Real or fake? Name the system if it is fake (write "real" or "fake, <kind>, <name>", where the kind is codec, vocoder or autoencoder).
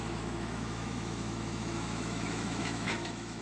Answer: fake, autoencoder, DAC-VAE